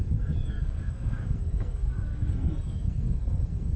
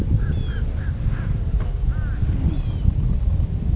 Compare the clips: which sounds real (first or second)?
second